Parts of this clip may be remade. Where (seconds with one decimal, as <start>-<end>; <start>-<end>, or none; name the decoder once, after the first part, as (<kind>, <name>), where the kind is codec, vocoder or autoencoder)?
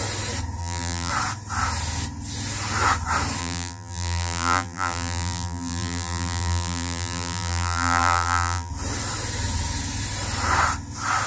0.6-1.1 (vocoder, BigVGAN v2); 3.4-8.7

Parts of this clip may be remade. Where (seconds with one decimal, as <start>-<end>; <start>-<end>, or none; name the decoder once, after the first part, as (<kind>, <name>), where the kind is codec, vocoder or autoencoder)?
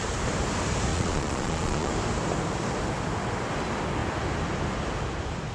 0.9-1.9 (vocoder, Vocos)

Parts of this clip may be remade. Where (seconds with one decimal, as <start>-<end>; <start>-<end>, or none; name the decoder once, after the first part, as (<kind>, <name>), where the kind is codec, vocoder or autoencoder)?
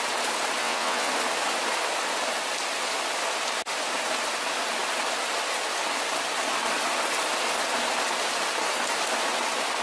0.6-1.1 (vocoder, WaveNeXt)